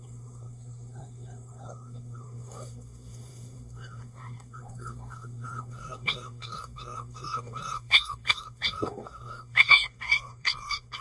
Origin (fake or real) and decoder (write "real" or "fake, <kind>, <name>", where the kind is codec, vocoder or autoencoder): fake, codec, SNAC